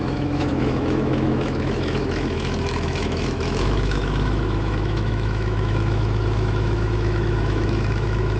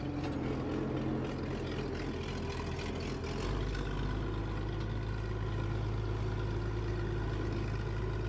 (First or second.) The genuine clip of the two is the second